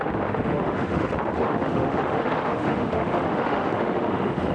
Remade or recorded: remade